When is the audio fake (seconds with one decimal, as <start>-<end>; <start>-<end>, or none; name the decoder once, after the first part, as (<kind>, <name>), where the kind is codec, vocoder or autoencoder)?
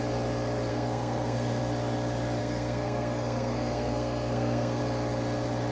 0.7-1.6 (codec, SNAC); 2.4-4.8